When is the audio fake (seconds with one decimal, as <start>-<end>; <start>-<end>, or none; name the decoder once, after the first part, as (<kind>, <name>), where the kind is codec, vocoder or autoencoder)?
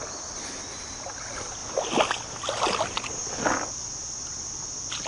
none